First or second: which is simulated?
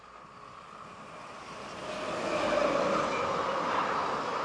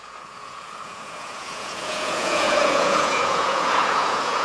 second